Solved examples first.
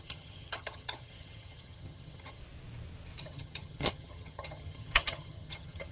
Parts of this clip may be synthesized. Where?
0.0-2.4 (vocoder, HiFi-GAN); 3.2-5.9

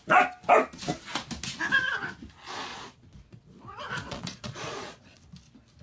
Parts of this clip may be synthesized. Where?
2.7-5.2 (vocoder, Vocos)

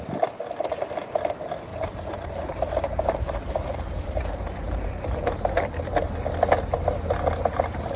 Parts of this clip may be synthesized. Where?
1.7-5.8 (vocoder, BigVGAN v2)